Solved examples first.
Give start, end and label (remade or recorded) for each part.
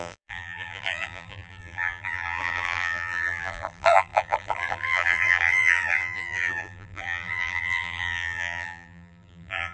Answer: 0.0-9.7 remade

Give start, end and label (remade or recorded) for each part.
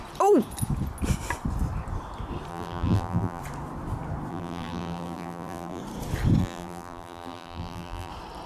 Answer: 0.0-2.5 recorded; 2.5-3.4 remade; 3.4-4.3 recorded; 4.3-5.8 remade; 5.8-6.4 recorded; 6.4-8.1 remade; 8.1-8.5 recorded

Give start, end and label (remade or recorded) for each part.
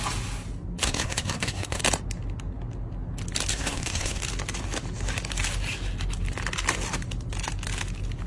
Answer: 0.0-0.8 recorded; 0.8-1.8 remade; 1.8-3.5 recorded; 3.5-4.2 remade; 4.2-8.3 recorded